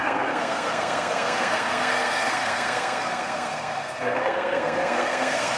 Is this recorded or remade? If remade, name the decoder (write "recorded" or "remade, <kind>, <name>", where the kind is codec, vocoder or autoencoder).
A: remade, codec, SNAC